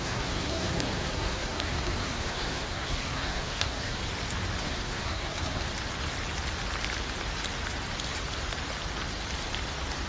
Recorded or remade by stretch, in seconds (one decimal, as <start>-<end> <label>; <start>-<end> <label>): 0.0-4.0 remade; 4.0-4.6 recorded; 4.6-5.7 remade; 5.7-10.1 recorded